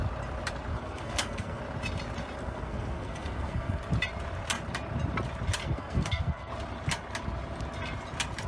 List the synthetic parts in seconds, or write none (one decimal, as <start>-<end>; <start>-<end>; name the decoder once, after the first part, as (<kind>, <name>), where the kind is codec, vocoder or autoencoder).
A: 0.7-1.6 (codec, SNAC); 2.4-3.8; 5.6-6.5